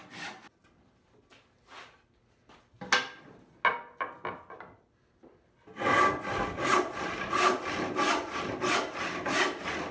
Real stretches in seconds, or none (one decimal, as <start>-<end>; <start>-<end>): 0.0-9.9